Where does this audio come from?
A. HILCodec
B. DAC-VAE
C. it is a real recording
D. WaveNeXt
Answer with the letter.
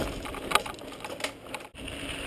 C